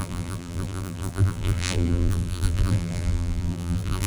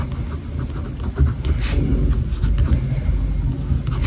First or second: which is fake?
first